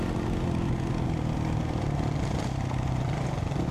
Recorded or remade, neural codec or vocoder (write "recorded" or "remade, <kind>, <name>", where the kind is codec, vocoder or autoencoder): recorded